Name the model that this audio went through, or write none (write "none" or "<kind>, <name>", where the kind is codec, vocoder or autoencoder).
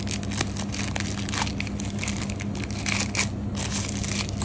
none